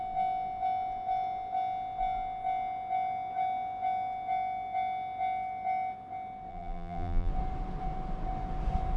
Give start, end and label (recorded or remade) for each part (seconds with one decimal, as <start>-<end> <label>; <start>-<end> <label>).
0.0-6.5 recorded; 6.5-7.3 remade; 7.3-9.0 recorded